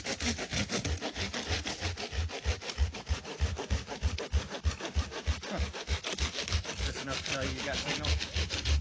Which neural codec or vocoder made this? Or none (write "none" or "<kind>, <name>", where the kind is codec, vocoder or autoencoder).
none